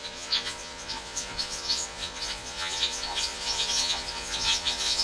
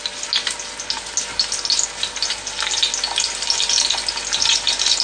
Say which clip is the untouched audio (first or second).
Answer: second